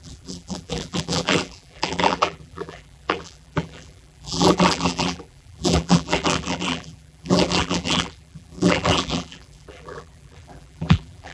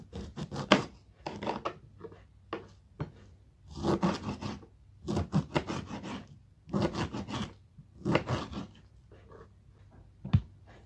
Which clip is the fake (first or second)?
first